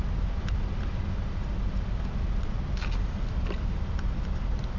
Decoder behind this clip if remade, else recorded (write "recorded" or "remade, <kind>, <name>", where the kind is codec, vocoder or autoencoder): recorded